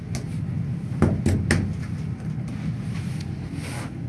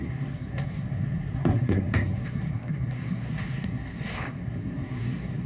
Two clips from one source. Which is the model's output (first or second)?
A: second